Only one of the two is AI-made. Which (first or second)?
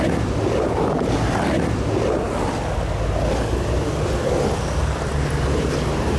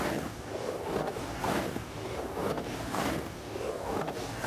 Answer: second